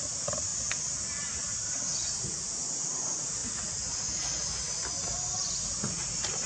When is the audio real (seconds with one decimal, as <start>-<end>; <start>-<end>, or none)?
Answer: 0.0-6.5